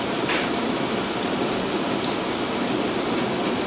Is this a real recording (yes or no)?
yes